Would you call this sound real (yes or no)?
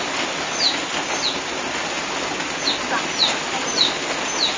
yes